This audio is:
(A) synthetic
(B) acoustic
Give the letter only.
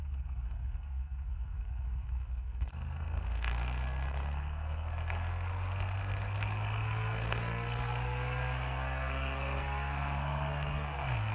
A